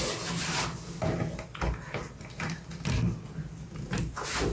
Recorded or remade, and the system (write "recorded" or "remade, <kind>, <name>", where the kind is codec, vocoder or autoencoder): recorded